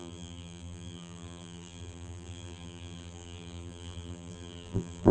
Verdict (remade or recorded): remade